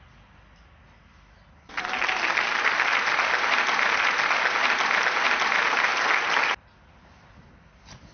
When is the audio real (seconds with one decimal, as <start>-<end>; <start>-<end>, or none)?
0.0-8.1